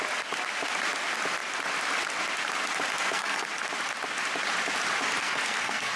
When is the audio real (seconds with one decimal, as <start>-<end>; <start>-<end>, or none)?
0.0-2.9; 3.5-5.2